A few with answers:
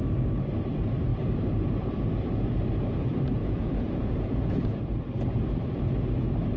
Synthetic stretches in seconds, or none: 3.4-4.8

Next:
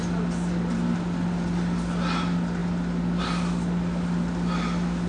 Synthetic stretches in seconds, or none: none